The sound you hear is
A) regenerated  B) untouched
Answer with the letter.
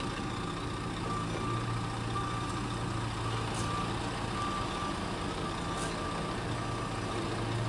B